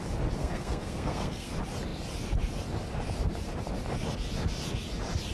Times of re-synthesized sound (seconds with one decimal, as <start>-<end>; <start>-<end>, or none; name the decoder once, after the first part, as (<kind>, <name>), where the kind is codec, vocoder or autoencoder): 0.4-1.5 (codec, SNAC)